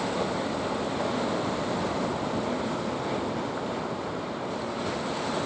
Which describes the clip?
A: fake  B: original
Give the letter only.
B